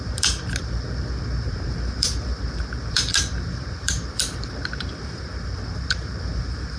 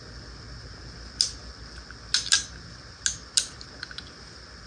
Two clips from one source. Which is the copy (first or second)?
first